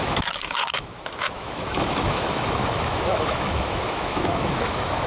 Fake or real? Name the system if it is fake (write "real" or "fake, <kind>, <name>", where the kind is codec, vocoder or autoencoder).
fake, autoencoder, DAC-VAE